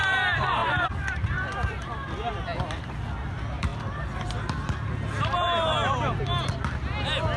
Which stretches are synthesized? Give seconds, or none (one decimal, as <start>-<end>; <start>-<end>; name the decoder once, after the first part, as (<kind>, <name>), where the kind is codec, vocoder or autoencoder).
0.0-3.7 (vocoder, BigVGAN v2)